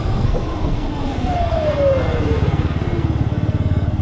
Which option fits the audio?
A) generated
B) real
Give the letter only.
A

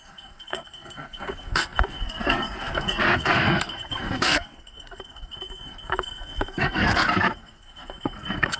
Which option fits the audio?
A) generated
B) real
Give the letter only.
A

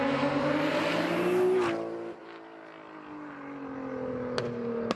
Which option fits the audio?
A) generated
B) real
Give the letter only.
B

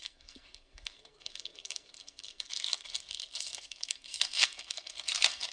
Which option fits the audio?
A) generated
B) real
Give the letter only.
A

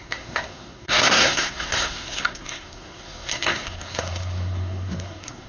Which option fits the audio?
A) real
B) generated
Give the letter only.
B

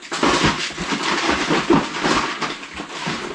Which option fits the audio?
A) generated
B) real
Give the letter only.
B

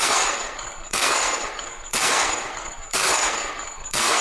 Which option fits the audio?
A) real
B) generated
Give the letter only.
B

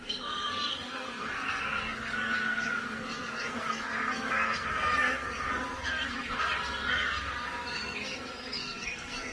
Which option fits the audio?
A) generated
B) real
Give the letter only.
A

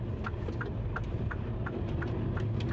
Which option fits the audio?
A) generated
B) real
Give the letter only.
B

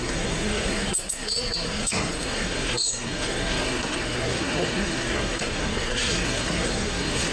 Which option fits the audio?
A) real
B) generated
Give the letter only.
B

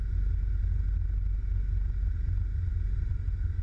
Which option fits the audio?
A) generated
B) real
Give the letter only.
B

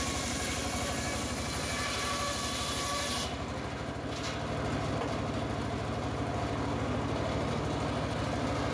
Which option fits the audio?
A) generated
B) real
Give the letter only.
B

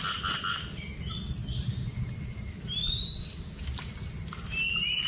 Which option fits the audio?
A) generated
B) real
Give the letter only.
B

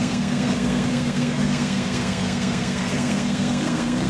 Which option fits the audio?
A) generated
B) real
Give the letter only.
A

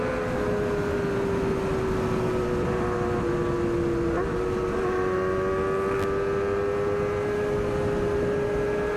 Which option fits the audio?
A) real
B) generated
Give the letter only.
A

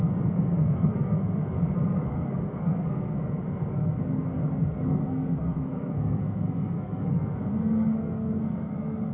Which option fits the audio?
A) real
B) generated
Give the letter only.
B